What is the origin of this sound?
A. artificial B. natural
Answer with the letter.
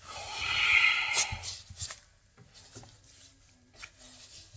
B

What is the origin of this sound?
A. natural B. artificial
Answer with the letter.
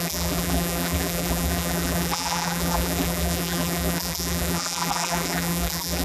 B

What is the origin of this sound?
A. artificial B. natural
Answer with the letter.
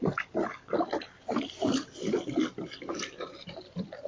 B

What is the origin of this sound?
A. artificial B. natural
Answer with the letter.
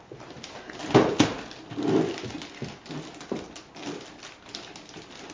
B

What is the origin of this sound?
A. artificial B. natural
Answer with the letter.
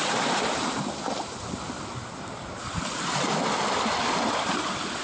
B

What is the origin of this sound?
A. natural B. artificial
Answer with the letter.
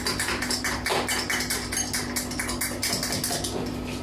A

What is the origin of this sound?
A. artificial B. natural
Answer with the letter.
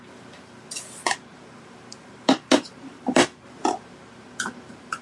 A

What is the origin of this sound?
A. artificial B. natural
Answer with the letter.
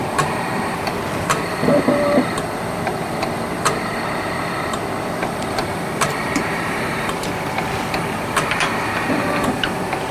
A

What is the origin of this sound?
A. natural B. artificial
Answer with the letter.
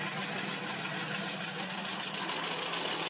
B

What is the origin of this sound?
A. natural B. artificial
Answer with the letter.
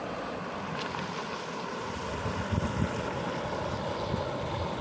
A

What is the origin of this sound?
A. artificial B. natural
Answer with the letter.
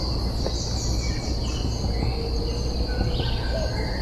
B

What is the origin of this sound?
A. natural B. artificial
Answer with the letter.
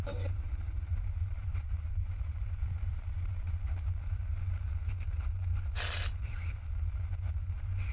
B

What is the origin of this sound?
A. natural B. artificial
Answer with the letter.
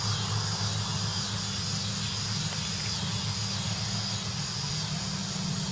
A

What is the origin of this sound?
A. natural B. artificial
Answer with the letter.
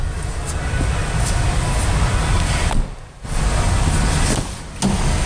A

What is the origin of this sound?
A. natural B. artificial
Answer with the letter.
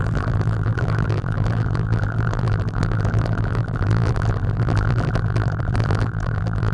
B